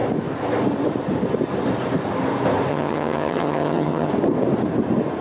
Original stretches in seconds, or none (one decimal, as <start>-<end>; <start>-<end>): 0.0-2.7; 4.1-5.2